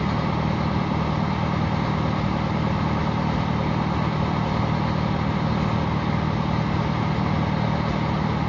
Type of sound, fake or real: real